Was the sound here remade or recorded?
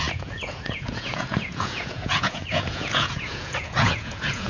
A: remade